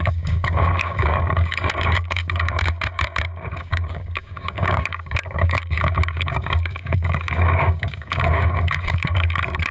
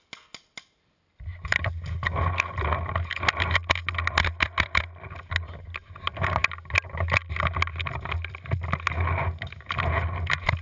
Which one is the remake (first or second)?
first